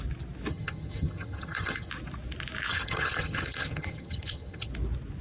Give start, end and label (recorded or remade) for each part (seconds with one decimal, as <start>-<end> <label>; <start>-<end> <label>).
0.0-0.5 recorded; 0.5-1.9 remade; 1.9-2.7 recorded; 2.7-4.7 remade; 4.7-5.2 recorded

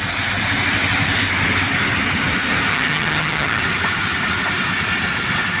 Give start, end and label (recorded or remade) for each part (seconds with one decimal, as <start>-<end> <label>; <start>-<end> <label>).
0.0-2.7 recorded; 2.7-3.6 remade; 3.6-5.6 recorded

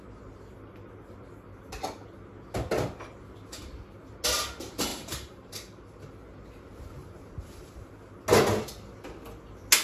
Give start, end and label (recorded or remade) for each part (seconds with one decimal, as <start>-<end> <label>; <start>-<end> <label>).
0.0-4.9 recorded; 4.9-6.0 remade; 6.0-7.0 recorded; 7.0-7.9 remade; 7.9-9.8 recorded